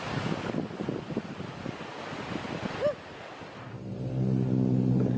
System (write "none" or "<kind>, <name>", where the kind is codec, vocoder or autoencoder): none